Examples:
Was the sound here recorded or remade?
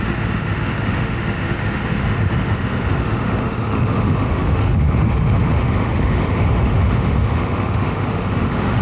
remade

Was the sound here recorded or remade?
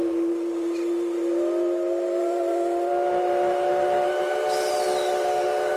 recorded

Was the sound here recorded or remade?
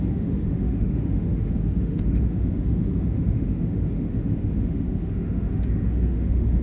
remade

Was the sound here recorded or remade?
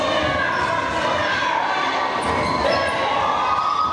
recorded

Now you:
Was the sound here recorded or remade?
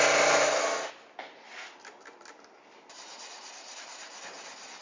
recorded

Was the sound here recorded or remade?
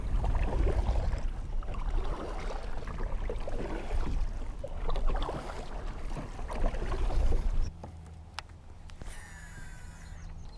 recorded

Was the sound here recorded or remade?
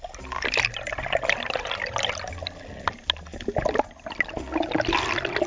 recorded